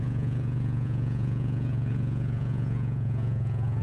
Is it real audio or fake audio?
fake